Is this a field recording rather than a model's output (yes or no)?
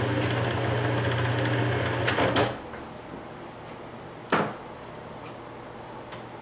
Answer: yes